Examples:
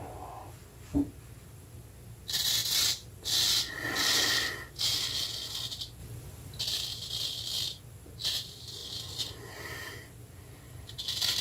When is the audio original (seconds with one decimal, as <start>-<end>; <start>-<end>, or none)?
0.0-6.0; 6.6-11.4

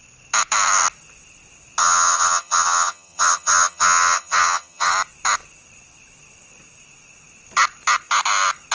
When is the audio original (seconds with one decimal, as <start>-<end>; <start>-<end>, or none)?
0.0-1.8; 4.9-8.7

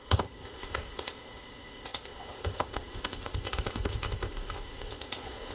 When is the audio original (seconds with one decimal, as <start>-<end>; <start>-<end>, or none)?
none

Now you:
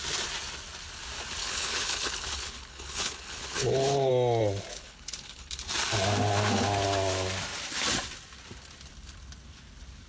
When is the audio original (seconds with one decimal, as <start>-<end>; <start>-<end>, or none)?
0.0-1.4; 4.1-4.7; 5.7-10.1

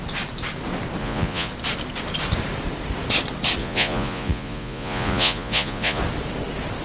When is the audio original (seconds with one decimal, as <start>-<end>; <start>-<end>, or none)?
0.0-1.0; 1.5-3.6; 6.0-6.8

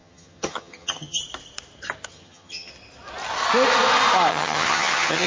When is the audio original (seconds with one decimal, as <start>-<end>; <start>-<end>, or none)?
1.2-2.1; 2.7-4.3